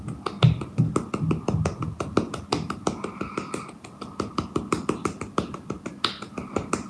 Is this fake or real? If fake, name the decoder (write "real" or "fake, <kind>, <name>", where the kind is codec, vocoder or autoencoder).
real